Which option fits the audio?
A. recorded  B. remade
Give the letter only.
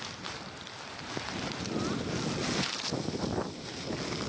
A